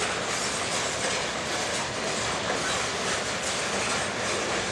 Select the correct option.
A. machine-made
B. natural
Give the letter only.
B